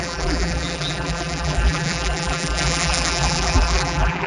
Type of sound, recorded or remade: remade